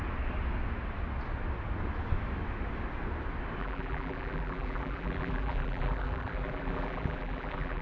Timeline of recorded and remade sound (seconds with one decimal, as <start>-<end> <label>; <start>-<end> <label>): 0.0-3.6 recorded; 3.6-7.8 remade